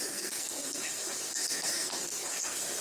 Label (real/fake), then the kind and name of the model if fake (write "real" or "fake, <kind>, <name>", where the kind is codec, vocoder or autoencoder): fake, codec, SNAC